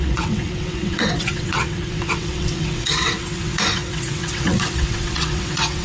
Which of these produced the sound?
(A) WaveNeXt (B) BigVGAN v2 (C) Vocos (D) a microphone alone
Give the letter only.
A